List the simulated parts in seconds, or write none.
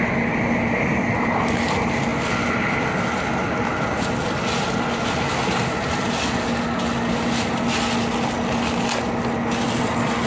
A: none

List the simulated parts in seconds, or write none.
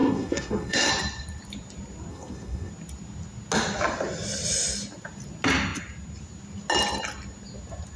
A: 0.0-0.9 (codec, SNAC); 2.1-2.7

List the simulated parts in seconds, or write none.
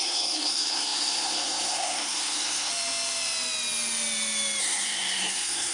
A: 0.0-2.7 (codec, SNAC); 4.6-5.7